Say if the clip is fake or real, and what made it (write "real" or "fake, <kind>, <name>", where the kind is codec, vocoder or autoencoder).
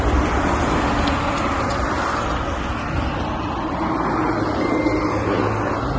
real